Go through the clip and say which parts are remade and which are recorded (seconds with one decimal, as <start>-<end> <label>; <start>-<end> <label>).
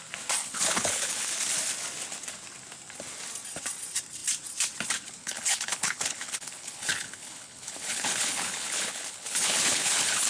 0.0-0.4 recorded; 0.4-1.3 remade; 1.3-5.2 recorded; 5.2-10.3 remade